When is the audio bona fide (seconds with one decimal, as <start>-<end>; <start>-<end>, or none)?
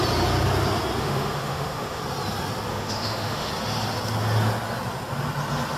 0.0-1.0; 2.0-2.7; 3.5-5.8